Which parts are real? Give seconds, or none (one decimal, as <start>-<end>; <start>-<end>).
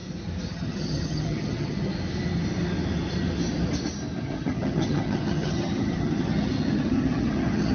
0.0-0.5; 1.9-4.2